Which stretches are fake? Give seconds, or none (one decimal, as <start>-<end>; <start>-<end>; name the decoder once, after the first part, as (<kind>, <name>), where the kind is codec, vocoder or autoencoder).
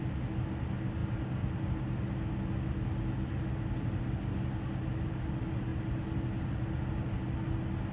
none